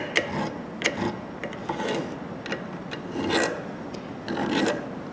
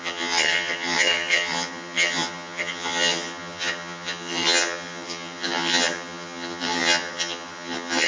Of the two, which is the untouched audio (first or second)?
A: first